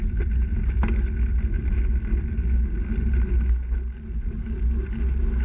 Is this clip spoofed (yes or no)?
no